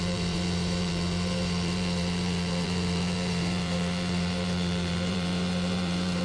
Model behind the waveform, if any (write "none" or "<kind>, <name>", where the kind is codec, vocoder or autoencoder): vocoder, BigVGAN v2